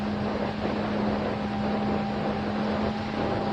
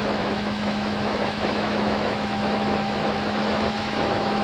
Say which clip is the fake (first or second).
second